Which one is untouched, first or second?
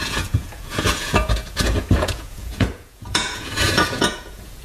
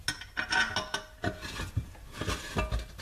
second